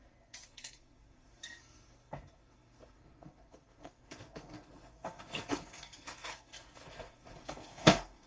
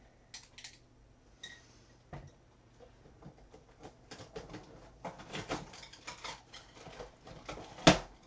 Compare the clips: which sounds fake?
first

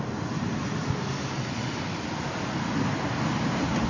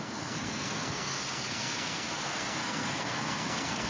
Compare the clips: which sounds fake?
second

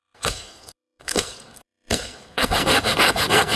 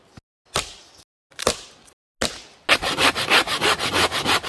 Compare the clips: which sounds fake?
first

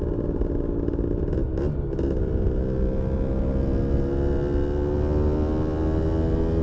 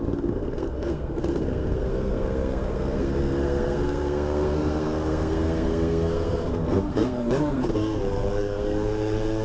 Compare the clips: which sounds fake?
second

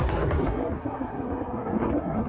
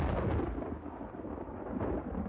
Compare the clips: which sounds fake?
first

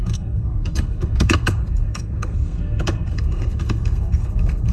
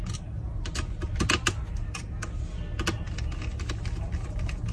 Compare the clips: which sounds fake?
first